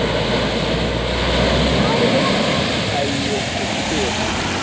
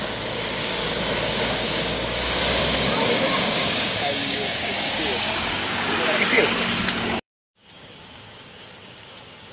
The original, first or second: first